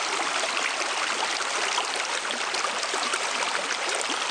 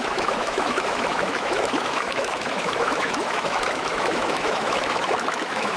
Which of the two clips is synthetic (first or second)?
second